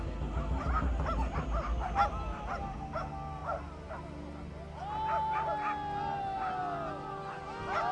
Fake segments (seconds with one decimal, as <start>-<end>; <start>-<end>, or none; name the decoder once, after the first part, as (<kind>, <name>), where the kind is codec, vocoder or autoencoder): 3.4-3.9 (vocoder, BigVGAN v2)

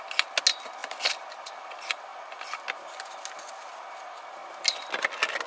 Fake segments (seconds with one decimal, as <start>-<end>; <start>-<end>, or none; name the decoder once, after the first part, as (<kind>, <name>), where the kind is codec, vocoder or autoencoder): none

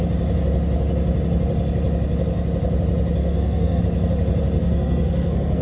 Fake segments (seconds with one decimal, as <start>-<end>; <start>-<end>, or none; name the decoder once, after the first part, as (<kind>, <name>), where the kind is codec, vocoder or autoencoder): 3.2-3.8 (codec, SNAC); 4.6-5.6

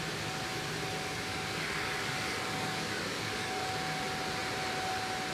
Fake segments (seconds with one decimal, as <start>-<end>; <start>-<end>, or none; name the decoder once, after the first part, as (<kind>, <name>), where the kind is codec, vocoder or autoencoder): 1.3-3.7 (codec, DAC)

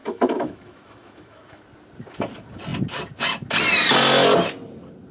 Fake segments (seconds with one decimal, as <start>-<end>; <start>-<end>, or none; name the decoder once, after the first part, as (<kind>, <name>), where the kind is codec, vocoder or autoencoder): 0.0-1.6 (autoencoder, DAC-VAE)